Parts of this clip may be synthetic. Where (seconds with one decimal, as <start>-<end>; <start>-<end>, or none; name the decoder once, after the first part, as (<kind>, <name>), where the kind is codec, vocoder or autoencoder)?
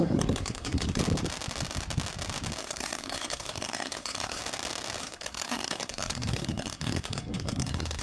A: 0.0-1.0 (codec, SNAC); 2.6-4.4; 5.0-8.0